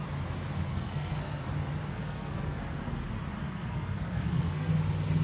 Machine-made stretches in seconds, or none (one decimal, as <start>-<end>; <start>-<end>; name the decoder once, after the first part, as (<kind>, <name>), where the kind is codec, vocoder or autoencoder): 0.7-1.4 (codec, SNAC); 1.9-3.0; 3.4-4.7